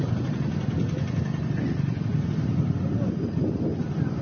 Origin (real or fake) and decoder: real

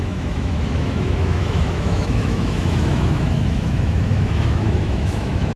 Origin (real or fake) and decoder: fake, autoencoder, DAC-VAE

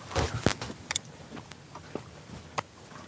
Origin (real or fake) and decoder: real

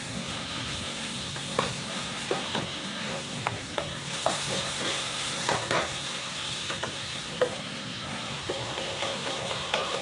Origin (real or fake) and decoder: fake, codec, SNAC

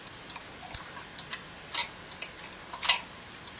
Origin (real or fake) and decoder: real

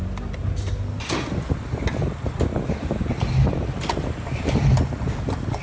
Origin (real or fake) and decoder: real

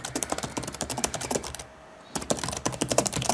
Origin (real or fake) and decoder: fake, vocoder, BigVGAN v2